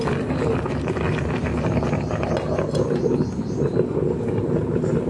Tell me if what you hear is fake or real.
real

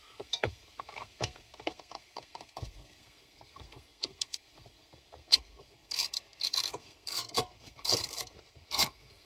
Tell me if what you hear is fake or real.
fake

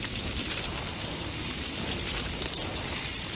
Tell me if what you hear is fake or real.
real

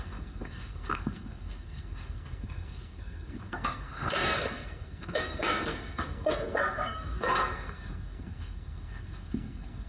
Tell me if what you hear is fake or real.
fake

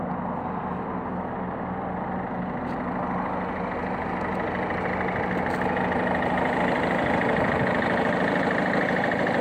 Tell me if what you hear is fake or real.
real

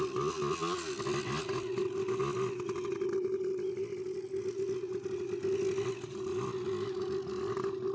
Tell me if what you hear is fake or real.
real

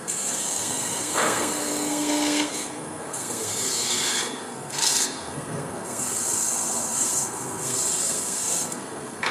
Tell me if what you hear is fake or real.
fake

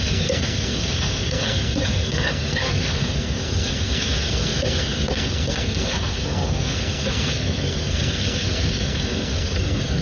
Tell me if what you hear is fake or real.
fake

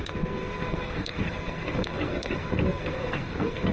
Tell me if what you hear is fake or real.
fake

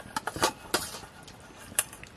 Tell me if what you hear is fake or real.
real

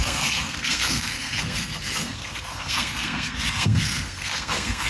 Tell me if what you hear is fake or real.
fake